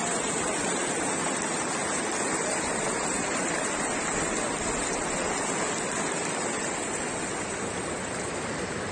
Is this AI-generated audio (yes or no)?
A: no